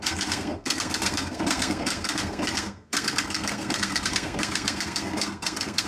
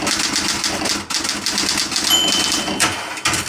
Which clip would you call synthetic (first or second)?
first